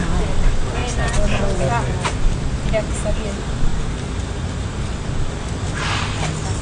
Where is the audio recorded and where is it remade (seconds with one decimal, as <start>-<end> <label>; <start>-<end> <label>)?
0.0-6.6 recorded